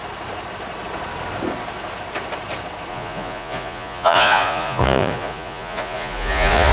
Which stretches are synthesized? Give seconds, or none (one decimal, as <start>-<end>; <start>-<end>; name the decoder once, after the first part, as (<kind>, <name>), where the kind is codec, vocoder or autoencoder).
2.9-6.7 (vocoder, Vocos)